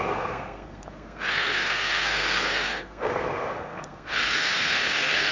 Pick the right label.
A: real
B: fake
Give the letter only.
B